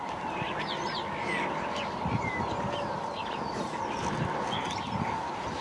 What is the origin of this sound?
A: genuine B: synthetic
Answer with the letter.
A